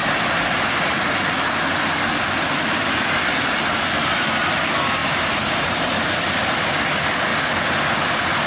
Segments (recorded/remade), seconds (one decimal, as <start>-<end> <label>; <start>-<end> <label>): 0.0-8.5 recorded